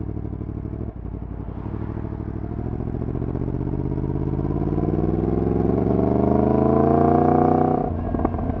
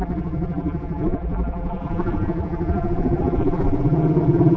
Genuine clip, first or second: first